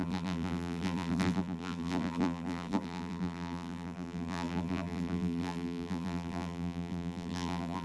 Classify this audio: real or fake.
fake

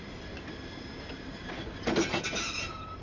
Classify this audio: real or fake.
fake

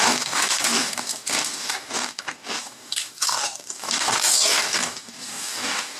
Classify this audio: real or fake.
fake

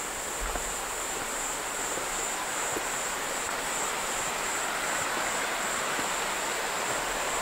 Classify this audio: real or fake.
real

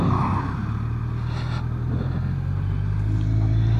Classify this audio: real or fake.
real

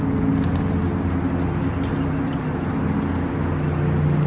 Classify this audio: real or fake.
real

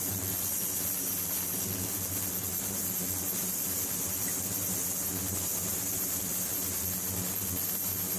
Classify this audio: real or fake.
real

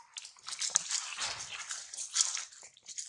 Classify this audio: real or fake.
real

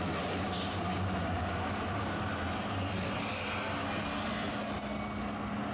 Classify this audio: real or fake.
real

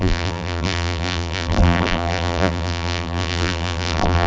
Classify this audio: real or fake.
fake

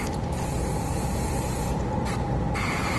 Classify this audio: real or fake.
fake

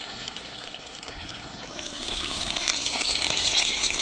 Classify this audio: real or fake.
fake